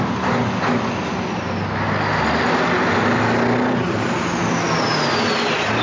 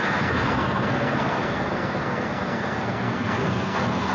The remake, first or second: second